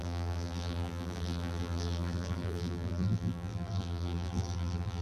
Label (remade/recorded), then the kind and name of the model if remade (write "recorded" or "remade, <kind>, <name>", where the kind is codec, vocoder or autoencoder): remade, vocoder, BigVGAN v2